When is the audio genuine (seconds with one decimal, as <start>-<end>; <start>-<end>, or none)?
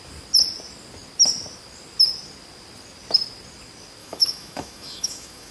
0.0-4.0